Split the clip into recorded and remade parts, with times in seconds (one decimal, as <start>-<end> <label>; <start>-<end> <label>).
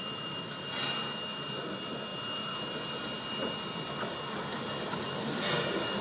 0.0-6.0 recorded